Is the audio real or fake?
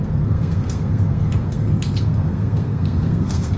fake